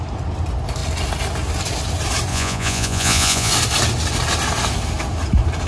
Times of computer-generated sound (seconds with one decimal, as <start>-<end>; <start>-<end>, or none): 2.3-3.5